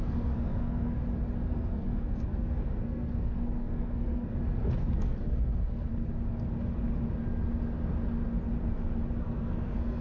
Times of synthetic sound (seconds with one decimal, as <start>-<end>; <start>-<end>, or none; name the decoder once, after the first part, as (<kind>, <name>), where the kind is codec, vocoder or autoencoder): 0.0-1.0 (codec, SNAC); 1.5-4.3; 4.9-5.9; 9.2-10.0